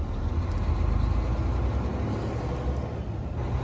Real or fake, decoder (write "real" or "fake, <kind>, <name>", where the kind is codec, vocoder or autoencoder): real